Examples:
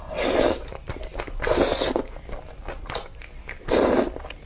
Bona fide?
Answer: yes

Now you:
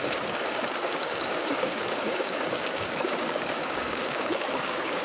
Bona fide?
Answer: no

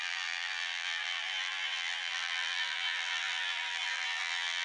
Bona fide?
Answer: no